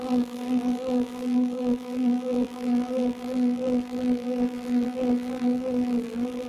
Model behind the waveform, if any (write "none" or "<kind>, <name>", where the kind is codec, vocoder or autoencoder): vocoder, BigVGAN v2